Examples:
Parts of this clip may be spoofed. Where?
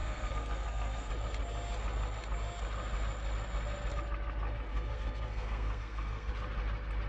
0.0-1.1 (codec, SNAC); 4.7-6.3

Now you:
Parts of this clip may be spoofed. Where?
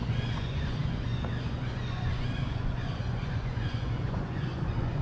0.0-5.0 (vocoder, Vocos)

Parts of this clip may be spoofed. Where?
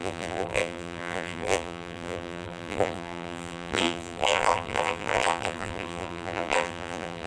0.0-7.3 (vocoder, BigVGAN v2)